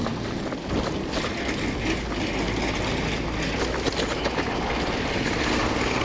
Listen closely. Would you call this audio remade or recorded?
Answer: recorded